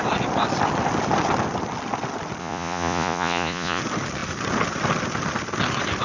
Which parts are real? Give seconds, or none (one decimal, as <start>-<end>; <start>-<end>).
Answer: 0.0-2.4; 3.8-6.0

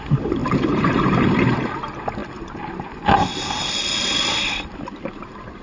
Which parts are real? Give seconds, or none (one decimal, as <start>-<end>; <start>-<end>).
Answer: 0.0-0.4; 1.7-5.6

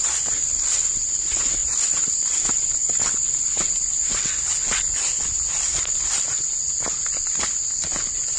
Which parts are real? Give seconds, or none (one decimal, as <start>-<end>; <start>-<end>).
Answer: 0.0-8.4

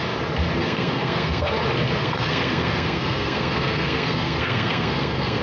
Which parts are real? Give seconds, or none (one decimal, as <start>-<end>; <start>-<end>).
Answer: 0.0-0.6; 1.5-2.0

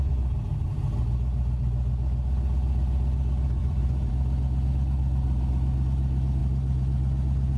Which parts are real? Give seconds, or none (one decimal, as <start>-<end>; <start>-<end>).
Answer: 0.0-3.6; 4.1-6.4